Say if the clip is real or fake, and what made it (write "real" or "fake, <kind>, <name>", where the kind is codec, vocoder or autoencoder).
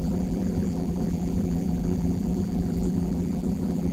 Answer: fake, vocoder, BigVGAN v2